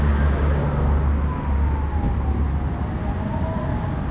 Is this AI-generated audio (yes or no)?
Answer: no